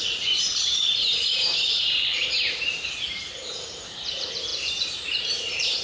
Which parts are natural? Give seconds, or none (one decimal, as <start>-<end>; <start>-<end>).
none

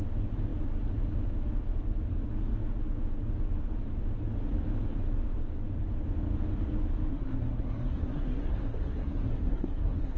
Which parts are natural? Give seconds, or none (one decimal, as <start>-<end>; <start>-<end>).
0.0-7.1

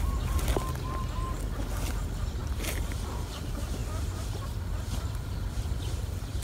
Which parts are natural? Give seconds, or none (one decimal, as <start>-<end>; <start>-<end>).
0.0-6.4